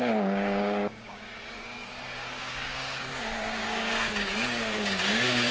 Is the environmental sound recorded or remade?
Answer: remade